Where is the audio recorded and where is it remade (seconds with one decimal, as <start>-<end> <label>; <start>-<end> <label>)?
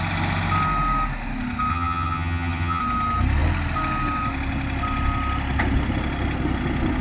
0.0-1.7 recorded; 1.7-2.8 remade; 2.8-7.0 recorded